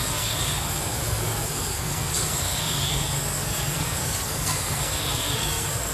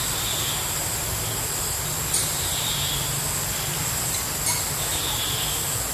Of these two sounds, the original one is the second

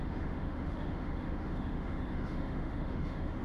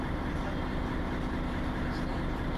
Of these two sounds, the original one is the second